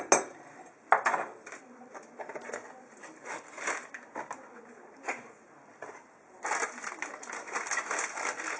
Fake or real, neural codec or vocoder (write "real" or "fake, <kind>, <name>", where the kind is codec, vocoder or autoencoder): real